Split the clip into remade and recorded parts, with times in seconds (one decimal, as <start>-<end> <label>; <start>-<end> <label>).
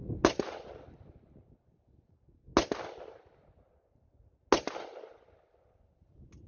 0.0-6.5 recorded